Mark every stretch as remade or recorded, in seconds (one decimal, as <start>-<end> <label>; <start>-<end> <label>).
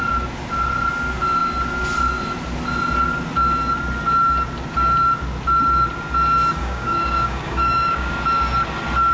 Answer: 0.0-6.6 recorded; 6.6-8.1 remade; 8.1-9.1 recorded